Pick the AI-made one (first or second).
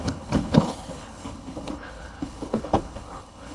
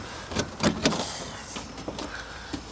first